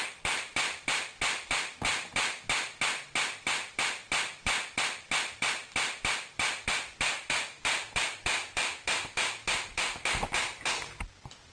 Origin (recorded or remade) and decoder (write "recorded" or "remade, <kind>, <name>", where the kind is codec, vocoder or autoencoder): recorded